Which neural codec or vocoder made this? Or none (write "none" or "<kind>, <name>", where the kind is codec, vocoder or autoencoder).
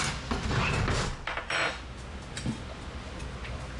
none